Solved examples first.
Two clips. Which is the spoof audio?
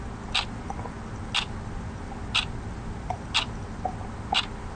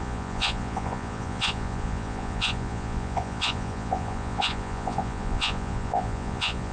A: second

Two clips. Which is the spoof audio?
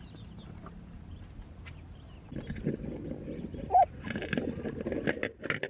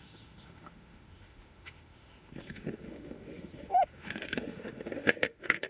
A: second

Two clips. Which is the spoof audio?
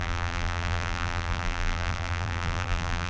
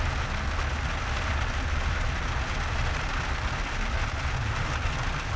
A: first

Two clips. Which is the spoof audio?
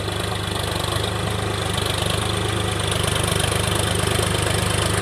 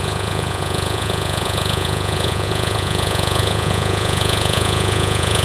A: second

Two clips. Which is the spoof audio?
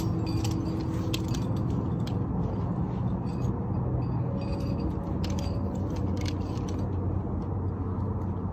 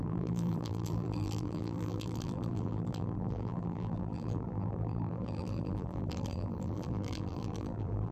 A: second